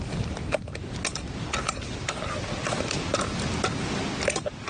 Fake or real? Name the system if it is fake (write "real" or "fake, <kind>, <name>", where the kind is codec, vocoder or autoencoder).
real